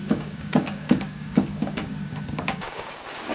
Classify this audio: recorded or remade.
remade